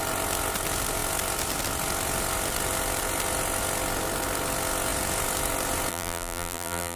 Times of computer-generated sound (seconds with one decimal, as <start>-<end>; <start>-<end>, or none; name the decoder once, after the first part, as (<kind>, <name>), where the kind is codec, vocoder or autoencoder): 5.9-7.0 (vocoder, BigVGAN v2)